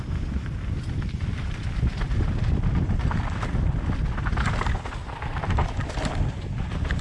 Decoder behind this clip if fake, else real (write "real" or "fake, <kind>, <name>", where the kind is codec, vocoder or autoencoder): fake, vocoder, BigVGAN v2